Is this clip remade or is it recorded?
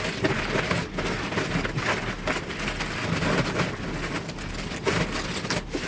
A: recorded